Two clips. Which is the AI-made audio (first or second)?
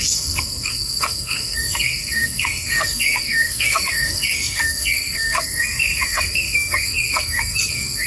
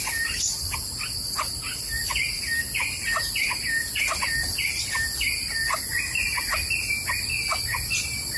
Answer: first